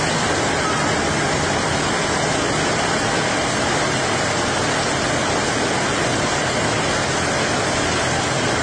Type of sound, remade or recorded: recorded